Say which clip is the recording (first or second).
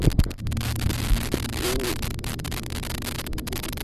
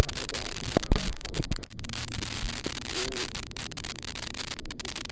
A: first